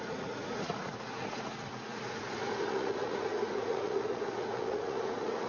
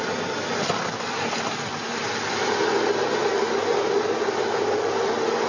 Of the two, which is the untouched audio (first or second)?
second